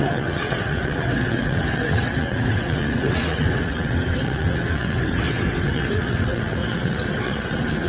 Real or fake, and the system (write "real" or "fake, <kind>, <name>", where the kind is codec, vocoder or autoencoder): fake, vocoder, WaveNeXt